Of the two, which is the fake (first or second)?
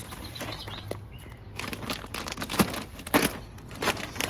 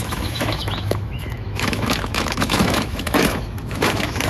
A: second